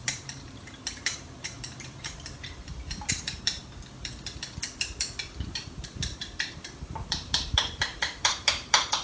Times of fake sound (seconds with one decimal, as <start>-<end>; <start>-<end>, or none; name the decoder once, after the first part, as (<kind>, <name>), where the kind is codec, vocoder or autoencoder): 0.0-3.6 (vocoder, BigVGAN v2); 5.6-9.0